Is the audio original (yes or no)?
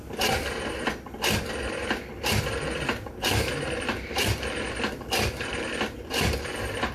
yes